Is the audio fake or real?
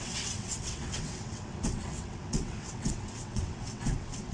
fake